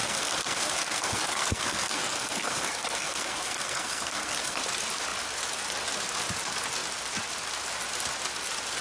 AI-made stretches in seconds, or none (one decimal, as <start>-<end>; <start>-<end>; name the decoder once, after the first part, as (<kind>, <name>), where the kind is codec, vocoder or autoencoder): 0.0-4.6 (codec, SNAC)